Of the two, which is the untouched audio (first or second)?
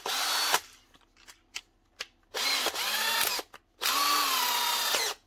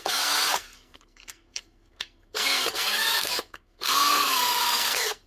first